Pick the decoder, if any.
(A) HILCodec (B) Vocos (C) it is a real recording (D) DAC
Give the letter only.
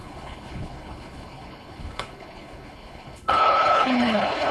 A